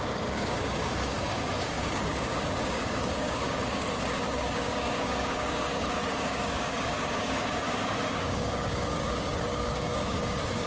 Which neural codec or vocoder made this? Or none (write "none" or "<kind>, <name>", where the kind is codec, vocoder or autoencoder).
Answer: codec, DAC